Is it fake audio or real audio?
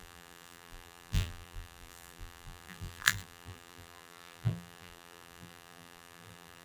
fake